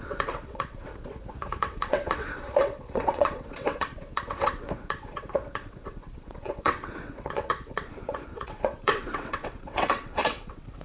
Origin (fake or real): fake